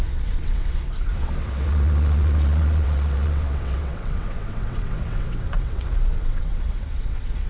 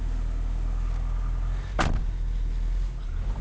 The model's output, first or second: first